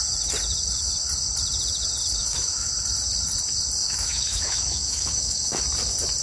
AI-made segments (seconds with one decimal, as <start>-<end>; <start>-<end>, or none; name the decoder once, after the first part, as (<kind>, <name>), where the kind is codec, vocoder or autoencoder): 2.2-2.7 (autoencoder, DAC-VAE); 3.8-5.6